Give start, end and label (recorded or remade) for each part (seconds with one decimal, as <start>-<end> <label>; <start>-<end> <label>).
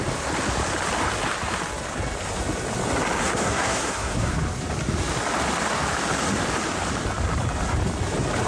0.0-3.2 recorded; 3.2-4.4 remade; 4.4-8.5 recorded